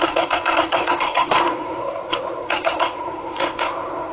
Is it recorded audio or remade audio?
remade